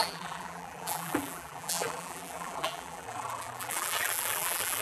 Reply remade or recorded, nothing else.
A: remade